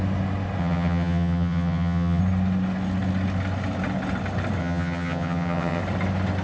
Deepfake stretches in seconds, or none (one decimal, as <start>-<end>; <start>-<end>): 0.6-2.2; 4.6-5.8